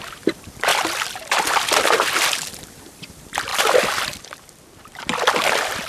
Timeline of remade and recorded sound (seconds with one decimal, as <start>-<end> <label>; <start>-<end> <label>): 0.0-0.7 remade; 0.7-2.5 recorded; 2.5-5.9 remade